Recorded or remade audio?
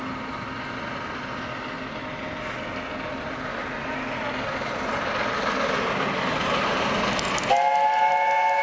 recorded